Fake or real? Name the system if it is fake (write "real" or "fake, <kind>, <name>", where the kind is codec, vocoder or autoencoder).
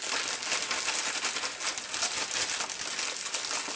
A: real